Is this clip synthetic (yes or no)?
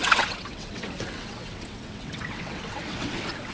yes